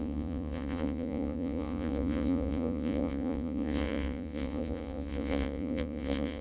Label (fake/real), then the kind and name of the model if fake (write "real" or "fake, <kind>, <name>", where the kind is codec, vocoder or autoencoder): fake, vocoder, Vocos